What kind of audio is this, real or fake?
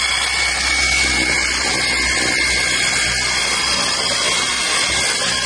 real